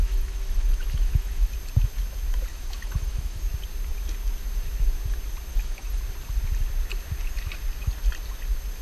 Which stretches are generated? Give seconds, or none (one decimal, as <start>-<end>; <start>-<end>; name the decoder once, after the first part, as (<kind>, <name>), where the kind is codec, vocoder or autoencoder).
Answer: 0.0-1.5 (autoencoder, DAC-VAE); 2.5-3.4; 5.5-6.0